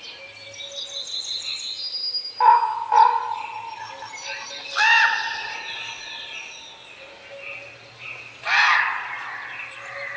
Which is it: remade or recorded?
recorded